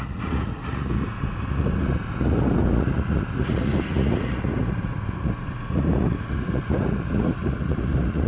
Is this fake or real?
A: fake